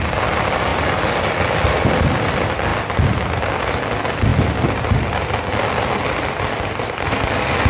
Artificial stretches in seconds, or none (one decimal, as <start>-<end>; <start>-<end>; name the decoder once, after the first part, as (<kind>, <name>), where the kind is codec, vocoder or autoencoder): 4.3-5.1 (vocoder, BigVGAN v2); 5.5-7.3